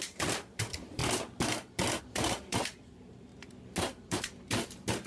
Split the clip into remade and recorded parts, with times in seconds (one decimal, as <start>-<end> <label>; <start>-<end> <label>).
0.0-1.0 remade; 1.0-2.0 recorded; 2.0-3.3 remade; 3.3-3.8 recorded; 3.8-5.1 remade